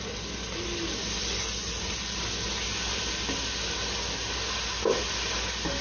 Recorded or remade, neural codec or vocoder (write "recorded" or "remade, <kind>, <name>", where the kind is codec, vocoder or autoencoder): recorded